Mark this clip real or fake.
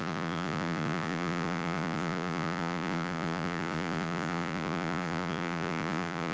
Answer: fake